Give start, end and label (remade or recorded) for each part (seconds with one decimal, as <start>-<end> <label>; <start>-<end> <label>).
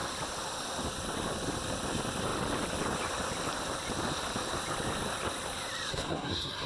0.0-5.9 recorded; 5.9-6.7 remade